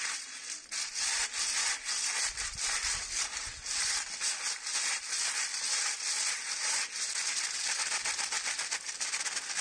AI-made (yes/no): no